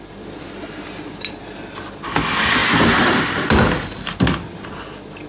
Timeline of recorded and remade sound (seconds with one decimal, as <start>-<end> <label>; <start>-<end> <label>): 0.0-5.3 recorded